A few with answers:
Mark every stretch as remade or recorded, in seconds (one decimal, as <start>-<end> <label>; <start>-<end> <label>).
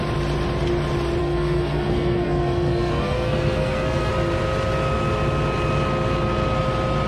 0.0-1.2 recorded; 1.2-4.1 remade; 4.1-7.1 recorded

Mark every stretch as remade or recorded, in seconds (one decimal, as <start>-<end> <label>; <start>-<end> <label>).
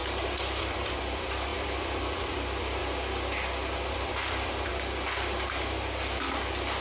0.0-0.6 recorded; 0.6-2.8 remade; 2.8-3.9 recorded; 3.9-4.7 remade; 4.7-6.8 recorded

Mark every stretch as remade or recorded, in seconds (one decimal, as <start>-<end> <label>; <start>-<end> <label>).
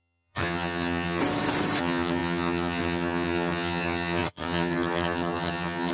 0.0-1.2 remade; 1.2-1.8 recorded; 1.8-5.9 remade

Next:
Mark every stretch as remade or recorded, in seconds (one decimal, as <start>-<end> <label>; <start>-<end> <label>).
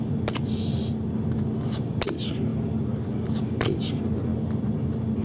0.0-5.2 recorded